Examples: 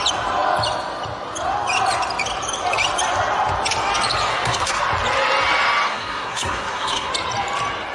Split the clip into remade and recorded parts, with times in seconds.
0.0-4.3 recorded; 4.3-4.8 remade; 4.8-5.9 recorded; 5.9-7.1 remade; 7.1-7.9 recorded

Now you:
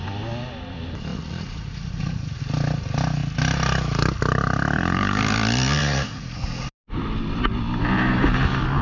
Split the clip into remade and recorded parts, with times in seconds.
0.0-1.1 recorded; 1.1-2.4 remade; 2.4-5.8 recorded; 5.8-6.7 remade; 6.7-8.8 recorded

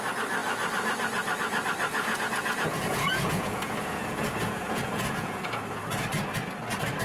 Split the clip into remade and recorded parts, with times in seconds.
0.0-1.9 recorded; 1.9-5.9 remade; 5.9-7.0 recorded

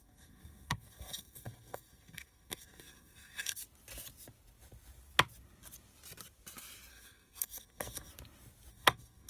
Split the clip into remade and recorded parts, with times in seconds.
0.0-3.6 remade; 3.6-6.9 recorded; 6.9-8.1 remade; 8.1-8.7 recorded; 8.7-9.3 remade